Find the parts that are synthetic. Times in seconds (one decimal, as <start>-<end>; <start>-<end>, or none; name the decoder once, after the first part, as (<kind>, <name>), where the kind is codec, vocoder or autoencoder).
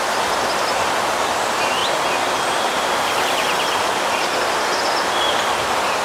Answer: 0.0-1.8 (vocoder, BigVGAN v2); 5.2-6.0